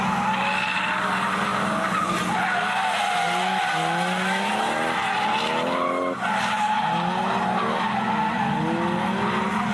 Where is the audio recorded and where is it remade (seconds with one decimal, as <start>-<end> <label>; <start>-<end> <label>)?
0.0-9.7 recorded